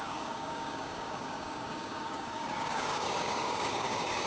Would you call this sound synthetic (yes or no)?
yes